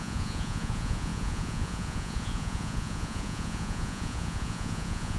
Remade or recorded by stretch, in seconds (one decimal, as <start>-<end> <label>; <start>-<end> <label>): 0.0-5.2 remade